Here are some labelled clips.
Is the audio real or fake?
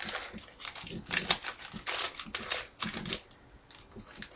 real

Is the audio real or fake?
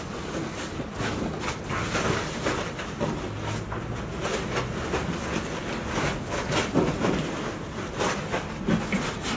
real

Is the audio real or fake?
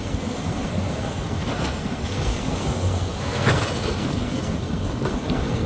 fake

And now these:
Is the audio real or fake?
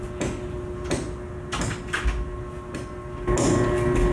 real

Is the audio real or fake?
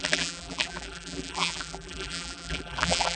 fake